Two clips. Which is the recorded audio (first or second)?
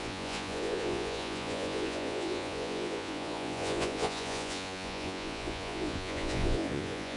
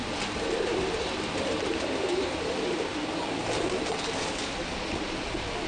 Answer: second